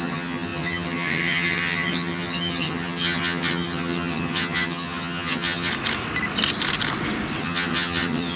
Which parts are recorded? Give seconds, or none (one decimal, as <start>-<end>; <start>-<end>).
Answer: 5.7-7.4